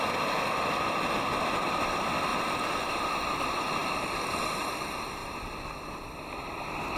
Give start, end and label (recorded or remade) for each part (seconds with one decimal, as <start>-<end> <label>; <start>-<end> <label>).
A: 0.0-2.3 recorded; 2.3-2.9 remade; 2.9-5.2 recorded; 5.2-5.9 remade; 5.9-7.0 recorded